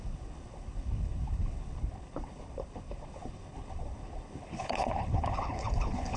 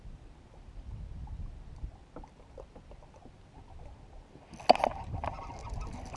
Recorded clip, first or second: second